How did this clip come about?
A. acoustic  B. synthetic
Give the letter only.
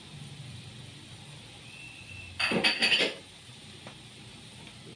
A